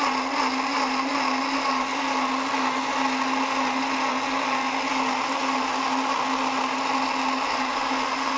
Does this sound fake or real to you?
real